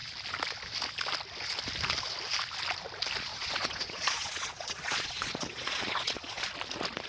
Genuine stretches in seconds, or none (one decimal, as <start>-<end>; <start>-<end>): 0.0-3.3; 6.4-7.1